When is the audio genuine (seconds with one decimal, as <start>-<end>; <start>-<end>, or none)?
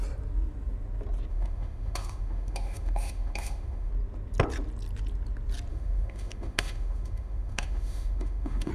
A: 0.0-1.3; 3.9-5.7